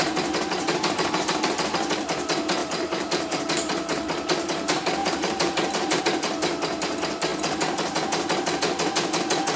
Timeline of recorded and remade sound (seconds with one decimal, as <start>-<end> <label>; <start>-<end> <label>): 0.0-2.6 recorded; 2.6-3.4 remade; 3.4-5.0 recorded; 5.0-6.0 remade; 6.0-9.6 recorded